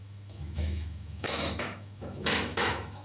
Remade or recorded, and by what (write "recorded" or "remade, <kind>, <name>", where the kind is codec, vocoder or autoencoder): remade, autoencoder, DAC-VAE